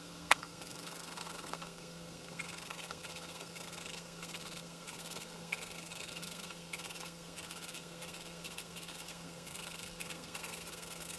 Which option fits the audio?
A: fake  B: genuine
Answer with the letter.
A